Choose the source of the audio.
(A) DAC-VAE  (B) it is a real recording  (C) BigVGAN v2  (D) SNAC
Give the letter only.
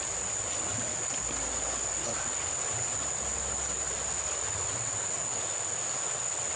B